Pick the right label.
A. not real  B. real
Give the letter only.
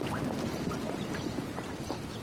B